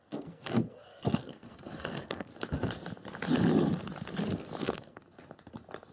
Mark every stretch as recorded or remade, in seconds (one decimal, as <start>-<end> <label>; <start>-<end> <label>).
0.0-2.3 remade; 2.3-4.6 recorded; 4.6-5.0 remade; 5.0-5.9 recorded